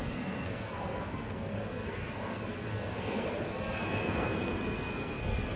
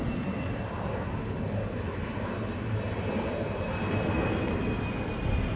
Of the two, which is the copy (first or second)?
first